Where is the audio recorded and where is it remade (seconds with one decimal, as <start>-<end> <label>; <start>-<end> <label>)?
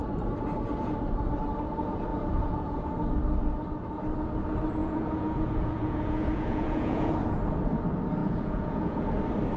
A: 0.0-2.1 recorded; 2.1-2.9 remade; 2.9-4.8 recorded; 4.8-7.1 remade; 7.1-8.2 recorded; 8.2-9.1 remade; 9.1-9.6 recorded